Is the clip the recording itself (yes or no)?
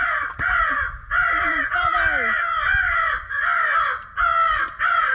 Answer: yes